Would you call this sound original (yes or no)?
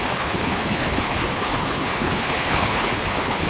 no